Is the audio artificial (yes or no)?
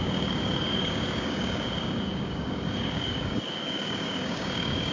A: yes